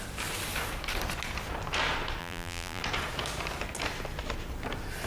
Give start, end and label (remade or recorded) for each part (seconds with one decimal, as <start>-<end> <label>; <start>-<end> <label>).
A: 0.0-2.2 recorded; 2.2-2.8 remade; 2.8-5.1 recorded